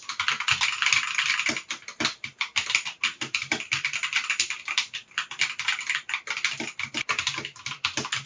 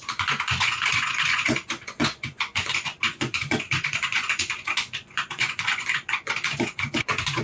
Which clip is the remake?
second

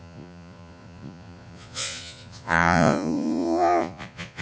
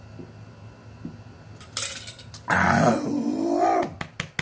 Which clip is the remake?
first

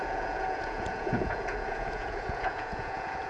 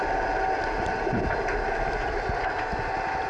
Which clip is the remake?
first